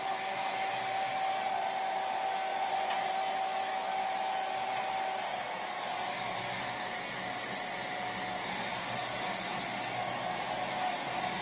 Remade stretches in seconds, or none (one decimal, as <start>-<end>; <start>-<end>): 2.5-3.1